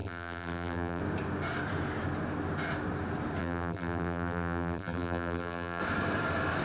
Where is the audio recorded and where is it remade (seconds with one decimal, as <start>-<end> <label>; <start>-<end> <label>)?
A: 0.0-1.0 remade; 1.0-3.4 recorded; 3.4-5.8 remade; 5.8-6.6 recorded